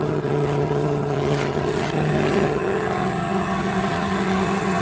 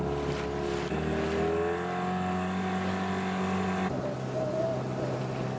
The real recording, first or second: second